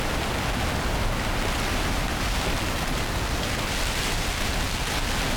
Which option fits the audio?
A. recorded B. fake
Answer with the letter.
A